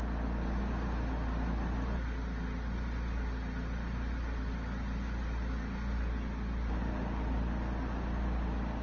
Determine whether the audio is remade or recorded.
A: recorded